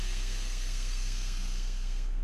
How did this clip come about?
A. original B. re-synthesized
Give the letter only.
B